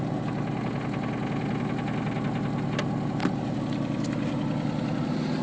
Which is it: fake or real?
real